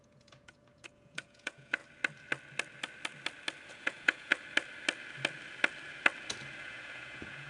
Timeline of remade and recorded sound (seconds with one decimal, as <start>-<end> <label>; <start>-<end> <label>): 0.0-1.8 remade; 1.8-3.7 recorded; 3.7-4.3 remade; 4.3-6.6 recorded; 6.6-7.5 remade